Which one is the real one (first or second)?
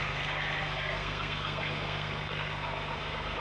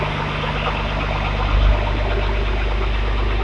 second